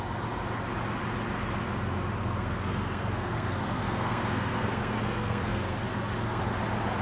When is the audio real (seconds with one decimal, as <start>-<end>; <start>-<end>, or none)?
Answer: 0.0-2.2; 6.4-7.0